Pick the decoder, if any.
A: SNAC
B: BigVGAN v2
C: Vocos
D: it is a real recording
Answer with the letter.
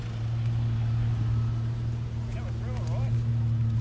D